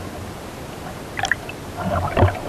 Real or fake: real